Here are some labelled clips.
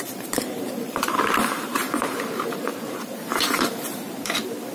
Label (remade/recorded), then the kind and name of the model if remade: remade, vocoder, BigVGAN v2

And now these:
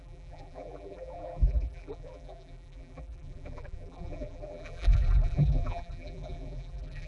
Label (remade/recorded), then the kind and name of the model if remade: remade, vocoder, BigVGAN v2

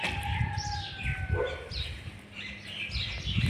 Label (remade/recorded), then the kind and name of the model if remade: recorded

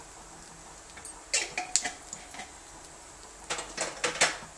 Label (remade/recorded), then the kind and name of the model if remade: recorded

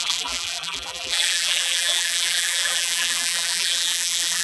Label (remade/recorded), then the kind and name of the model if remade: remade, vocoder, BigVGAN v2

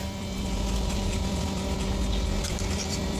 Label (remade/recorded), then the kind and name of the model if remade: remade, vocoder, BigVGAN v2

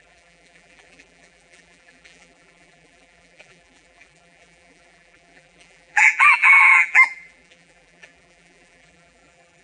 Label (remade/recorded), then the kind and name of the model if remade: remade, vocoder, BigVGAN v2